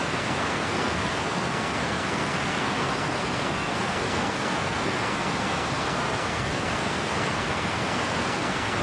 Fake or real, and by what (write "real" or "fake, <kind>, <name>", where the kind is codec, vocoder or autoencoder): fake, codec, SNAC